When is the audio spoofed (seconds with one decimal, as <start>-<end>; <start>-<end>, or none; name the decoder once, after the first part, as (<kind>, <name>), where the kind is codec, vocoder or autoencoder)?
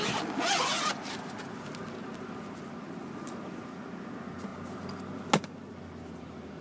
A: none